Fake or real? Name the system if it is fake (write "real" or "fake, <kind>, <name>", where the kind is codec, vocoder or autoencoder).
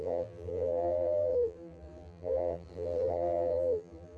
fake, vocoder, BigVGAN v2